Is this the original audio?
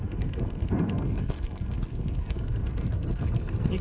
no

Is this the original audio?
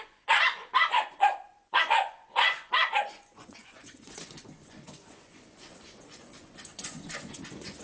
no